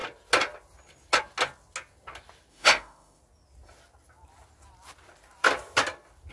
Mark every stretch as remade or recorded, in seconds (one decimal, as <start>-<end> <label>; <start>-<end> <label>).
0.0-2.5 recorded; 2.5-3.2 remade; 3.2-6.3 recorded